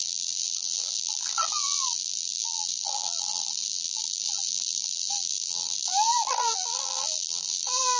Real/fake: fake